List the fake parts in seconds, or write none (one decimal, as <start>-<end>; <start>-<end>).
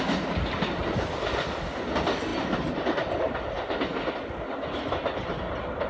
none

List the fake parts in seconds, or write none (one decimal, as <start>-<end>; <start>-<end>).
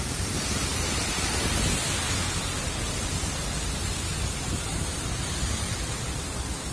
none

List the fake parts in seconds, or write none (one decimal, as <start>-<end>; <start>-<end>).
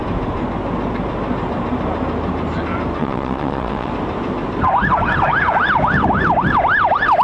3.0-3.9